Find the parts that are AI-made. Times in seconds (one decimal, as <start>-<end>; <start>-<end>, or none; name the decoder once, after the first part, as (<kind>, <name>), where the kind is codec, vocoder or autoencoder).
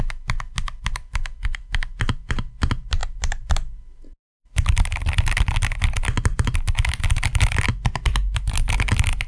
none